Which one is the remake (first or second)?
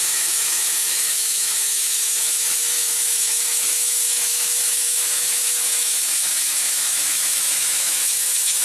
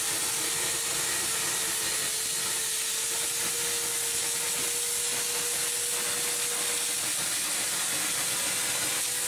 first